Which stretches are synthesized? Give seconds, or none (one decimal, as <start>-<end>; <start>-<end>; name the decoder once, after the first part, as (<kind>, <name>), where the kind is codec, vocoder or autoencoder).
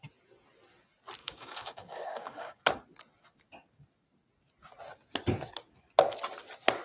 1.2-2.6 (codec, DAC)